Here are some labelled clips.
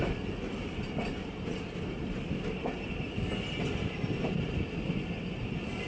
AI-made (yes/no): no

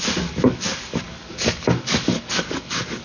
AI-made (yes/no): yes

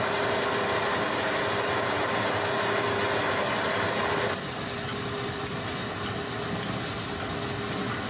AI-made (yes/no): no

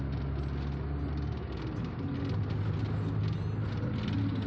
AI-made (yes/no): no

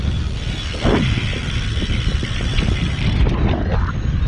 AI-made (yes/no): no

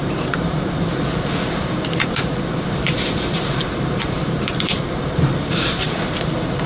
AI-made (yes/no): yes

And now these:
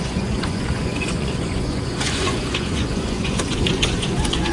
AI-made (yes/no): yes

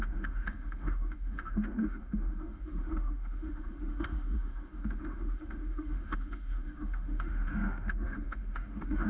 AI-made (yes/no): yes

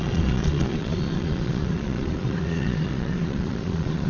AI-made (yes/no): yes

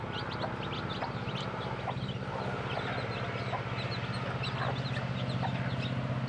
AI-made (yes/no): no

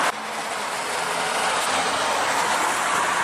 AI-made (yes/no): no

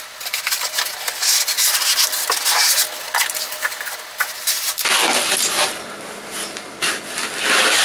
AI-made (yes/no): no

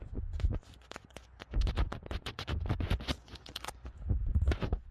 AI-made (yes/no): yes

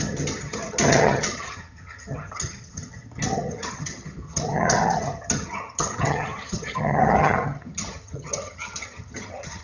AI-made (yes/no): yes